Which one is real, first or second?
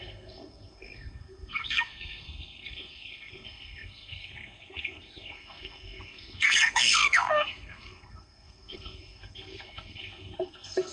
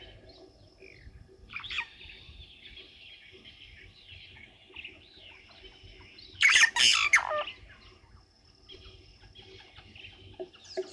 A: second